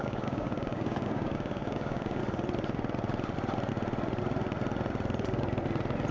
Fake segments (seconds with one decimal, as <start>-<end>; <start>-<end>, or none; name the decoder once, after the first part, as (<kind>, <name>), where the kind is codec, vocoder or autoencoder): 0.0-2.2 (codec, DAC)

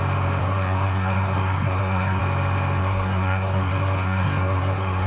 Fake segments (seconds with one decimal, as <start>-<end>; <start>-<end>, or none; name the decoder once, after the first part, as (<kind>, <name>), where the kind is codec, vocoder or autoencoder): 0.4-2.2 (codec, SNAC); 2.8-5.1

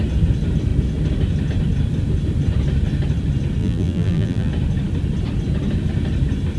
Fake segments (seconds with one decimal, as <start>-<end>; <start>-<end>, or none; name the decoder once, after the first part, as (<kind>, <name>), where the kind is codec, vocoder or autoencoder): 3.6-4.5 (vocoder, BigVGAN v2)

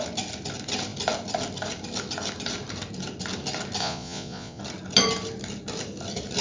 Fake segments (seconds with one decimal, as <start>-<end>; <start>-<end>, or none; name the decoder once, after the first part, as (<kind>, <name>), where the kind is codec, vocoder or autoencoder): 3.8-4.6 (vocoder, Vocos)

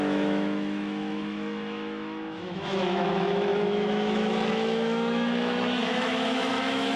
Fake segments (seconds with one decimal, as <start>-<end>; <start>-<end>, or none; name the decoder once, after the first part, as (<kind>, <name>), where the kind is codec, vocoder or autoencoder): 0.0-7.0 (autoencoder, DAC-VAE)

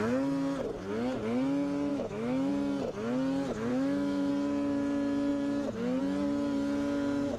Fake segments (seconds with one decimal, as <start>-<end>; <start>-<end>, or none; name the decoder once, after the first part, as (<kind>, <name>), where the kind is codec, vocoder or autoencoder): 1.9-2.5 (autoencoder, DAC-VAE); 3.7-4.3